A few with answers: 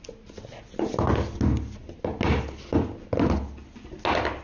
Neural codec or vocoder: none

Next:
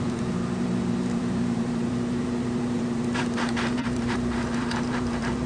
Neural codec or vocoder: vocoder, BigVGAN v2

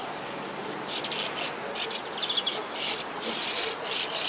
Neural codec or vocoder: none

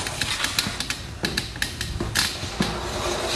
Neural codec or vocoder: none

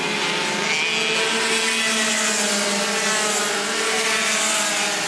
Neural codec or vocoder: none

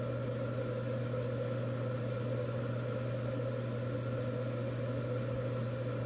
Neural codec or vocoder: none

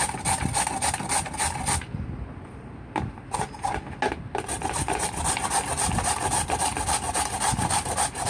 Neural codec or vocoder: none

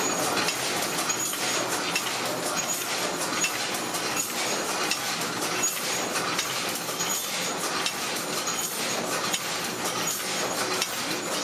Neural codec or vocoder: none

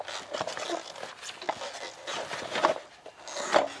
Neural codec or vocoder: none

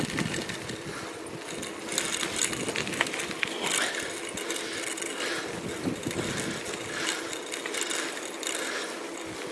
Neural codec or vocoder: none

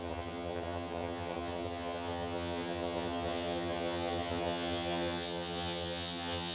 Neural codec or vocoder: vocoder, HiFi-GAN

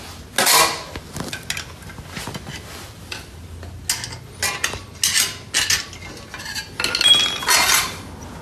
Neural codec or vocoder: none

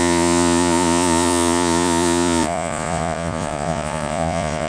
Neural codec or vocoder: vocoder, Vocos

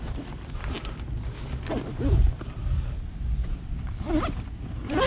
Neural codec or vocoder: none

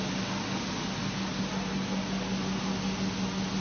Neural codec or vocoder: none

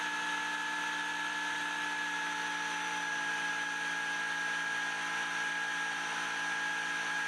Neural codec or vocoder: none